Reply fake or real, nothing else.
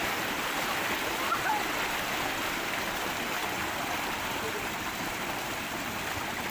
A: real